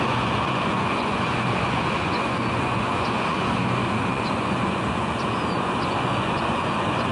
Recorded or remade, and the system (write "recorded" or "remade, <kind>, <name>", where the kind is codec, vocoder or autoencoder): remade, vocoder, Vocos